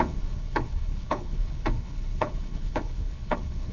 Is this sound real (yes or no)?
no